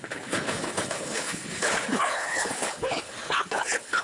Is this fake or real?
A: fake